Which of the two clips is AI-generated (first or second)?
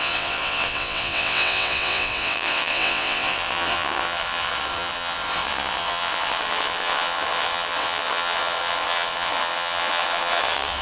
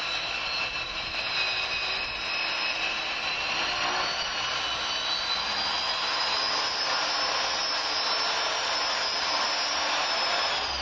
first